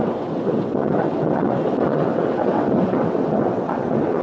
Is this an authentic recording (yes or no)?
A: no